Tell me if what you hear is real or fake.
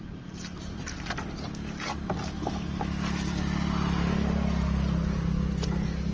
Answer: real